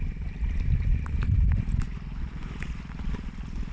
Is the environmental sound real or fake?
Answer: real